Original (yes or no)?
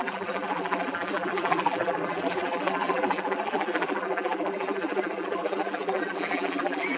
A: no